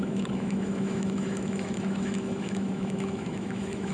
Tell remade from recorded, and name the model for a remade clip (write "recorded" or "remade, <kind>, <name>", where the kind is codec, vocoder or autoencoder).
remade, autoencoder, DAC-VAE